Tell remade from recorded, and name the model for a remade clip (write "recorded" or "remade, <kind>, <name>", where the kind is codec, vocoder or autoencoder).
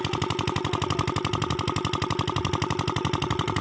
recorded